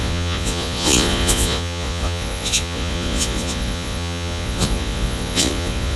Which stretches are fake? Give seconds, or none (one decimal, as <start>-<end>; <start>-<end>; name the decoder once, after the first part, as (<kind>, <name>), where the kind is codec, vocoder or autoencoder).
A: 0.0-6.0 (vocoder, Vocos)